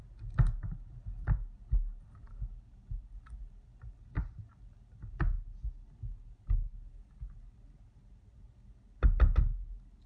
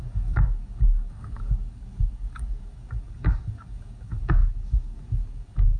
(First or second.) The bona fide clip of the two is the first